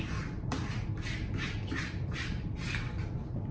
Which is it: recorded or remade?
recorded